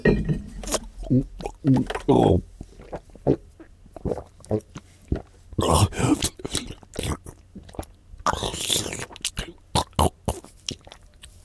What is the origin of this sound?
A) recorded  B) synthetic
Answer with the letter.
A